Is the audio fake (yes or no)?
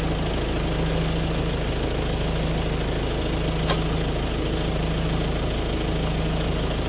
no